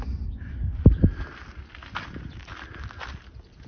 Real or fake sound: real